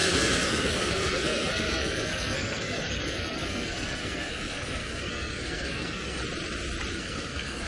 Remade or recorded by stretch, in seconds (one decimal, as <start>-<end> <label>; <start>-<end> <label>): 0.0-6.2 remade; 6.2-6.9 recorded; 6.9-7.7 remade